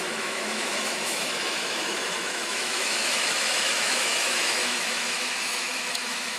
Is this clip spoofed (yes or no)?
yes